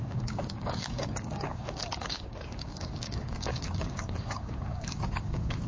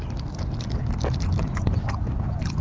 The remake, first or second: first